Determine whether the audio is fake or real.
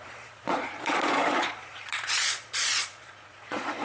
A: fake